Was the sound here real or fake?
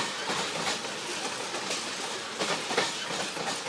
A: real